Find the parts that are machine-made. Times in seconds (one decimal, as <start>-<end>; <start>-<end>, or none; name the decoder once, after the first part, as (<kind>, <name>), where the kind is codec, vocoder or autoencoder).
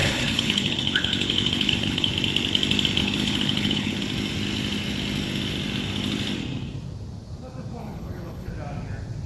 0.0-2.1 (codec, HILCodec); 3.0-4.0; 7.8-8.5